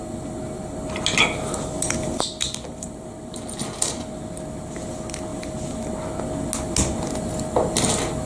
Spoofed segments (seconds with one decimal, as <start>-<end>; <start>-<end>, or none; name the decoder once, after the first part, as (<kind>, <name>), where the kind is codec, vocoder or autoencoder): 1.7-4.1 (vocoder, BigVGAN v2)